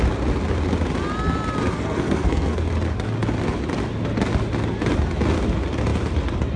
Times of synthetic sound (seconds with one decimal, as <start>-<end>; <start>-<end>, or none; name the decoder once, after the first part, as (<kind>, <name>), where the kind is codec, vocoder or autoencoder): 1.7-2.6 (codec, SNAC)